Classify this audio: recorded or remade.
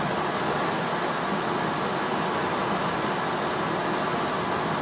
recorded